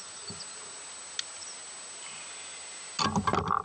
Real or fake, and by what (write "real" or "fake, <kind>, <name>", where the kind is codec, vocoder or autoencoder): real